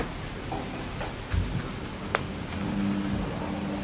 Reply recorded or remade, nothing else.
recorded